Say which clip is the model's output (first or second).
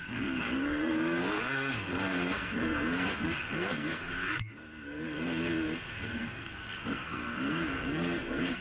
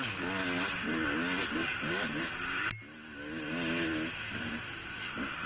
first